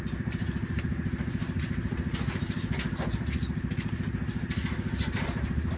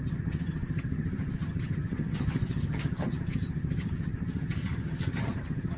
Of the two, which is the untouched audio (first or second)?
first